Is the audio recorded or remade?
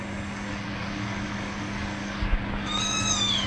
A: remade